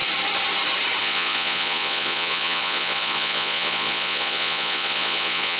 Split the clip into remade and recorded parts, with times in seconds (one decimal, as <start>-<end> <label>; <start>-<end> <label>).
0.0-1.0 recorded; 1.0-5.6 remade